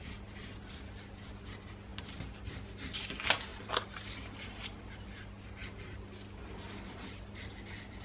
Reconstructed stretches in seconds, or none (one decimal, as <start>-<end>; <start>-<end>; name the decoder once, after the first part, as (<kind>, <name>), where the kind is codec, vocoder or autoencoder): 3.5-4.8 (vocoder, BigVGAN v2)